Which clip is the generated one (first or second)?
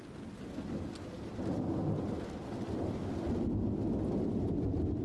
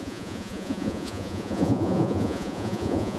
second